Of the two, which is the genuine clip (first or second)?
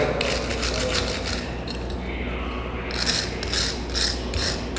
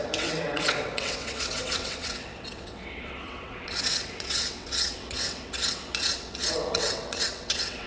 first